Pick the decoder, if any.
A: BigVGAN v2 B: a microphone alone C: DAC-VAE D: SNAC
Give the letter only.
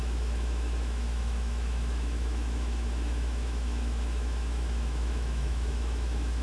C